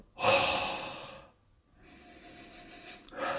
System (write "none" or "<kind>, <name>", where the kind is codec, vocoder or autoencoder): none